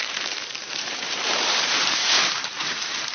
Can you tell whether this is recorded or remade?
remade